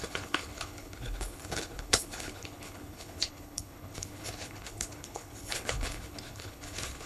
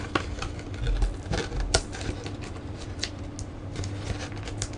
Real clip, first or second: second